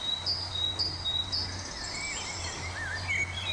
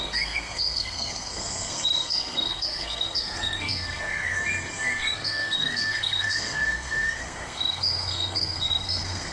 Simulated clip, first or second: second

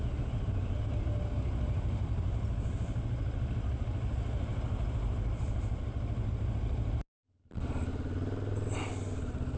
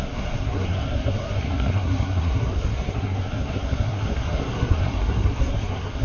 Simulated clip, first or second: second